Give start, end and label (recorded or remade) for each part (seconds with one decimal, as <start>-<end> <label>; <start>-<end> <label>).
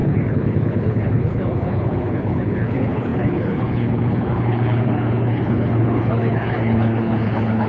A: 0.0-7.7 remade